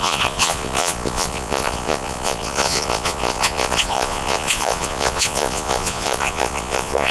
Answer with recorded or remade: remade